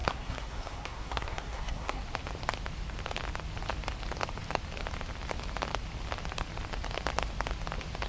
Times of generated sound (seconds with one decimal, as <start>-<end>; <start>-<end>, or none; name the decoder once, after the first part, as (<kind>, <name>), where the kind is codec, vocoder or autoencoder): 0.0-2.0 (codec, SNAC)

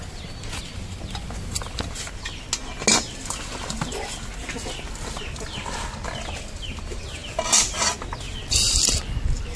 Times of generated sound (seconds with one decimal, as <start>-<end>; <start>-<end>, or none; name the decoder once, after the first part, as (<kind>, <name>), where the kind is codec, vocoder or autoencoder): none

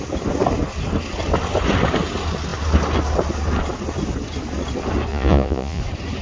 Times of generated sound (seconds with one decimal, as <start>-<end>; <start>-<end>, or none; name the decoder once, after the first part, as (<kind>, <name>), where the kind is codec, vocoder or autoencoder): 5.1-5.8 (vocoder, Vocos)

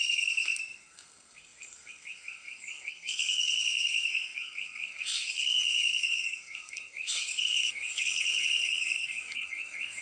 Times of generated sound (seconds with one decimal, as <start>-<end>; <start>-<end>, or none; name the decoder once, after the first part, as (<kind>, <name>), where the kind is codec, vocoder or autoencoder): 0.0-10.0 (codec, SNAC)

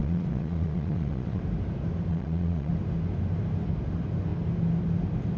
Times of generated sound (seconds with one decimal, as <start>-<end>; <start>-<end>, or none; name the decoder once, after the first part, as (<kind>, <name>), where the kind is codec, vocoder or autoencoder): 0.0-1.4 (vocoder, Vocos); 2.1-2.7

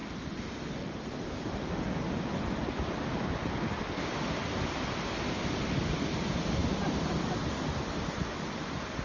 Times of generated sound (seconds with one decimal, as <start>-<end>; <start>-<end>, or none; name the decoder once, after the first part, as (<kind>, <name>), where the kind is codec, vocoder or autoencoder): none